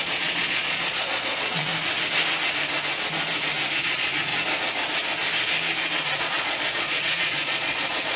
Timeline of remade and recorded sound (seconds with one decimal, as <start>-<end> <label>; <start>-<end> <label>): 0.0-1.7 remade; 1.7-3.8 recorded; 3.8-4.3 remade; 4.3-6.2 recorded; 6.2-8.2 remade